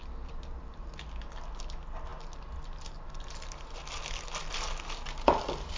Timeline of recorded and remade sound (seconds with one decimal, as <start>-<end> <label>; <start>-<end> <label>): 0.0-5.8 recorded